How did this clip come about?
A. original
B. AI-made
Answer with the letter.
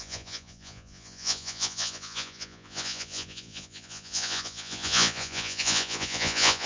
B